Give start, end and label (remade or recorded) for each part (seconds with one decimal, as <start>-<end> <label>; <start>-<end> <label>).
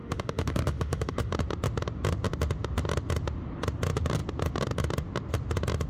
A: 0.0-1.3 remade; 1.3-5.9 recorded